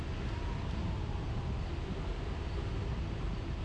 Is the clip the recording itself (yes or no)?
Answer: yes